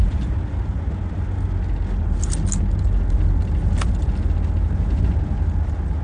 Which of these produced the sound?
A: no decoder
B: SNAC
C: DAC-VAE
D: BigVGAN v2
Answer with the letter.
A